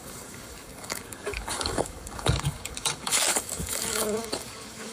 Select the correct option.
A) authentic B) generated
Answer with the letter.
B